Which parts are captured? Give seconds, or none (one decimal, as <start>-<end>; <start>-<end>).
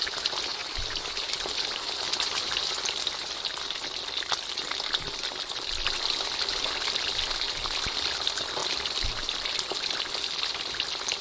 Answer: 0.0-11.2